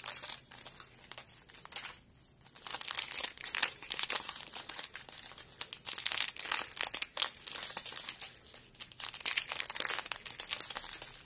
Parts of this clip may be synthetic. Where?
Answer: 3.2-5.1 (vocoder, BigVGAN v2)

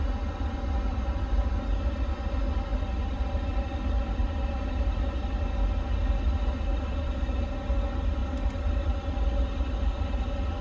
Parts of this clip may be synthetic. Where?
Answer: 2.7-3.3 (vocoder, BigVGAN v2); 6.7-7.4; 8.2-9.7

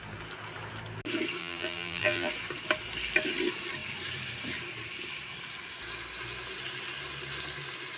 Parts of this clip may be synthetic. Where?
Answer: 1.4-2.3 (vocoder, BigVGAN v2)

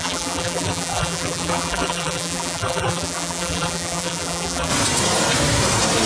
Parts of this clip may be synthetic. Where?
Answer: 0.0-4.7 (vocoder, BigVGAN v2)

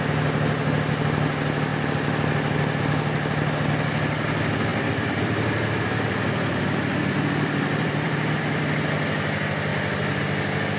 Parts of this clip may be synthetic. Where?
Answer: 4.7-8.4 (vocoder, BigVGAN v2); 9.7-10.2

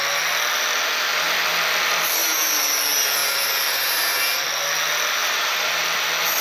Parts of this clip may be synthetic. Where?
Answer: 2.2-2.8 (vocoder, BigVGAN v2); 3.2-4.2; 5.2-5.9

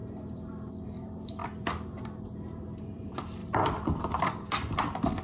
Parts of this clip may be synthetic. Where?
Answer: 0.7-5.2 (vocoder, BigVGAN v2)